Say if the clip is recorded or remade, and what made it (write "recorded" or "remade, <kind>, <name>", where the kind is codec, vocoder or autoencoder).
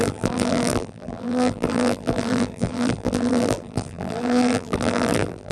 remade, vocoder, BigVGAN v2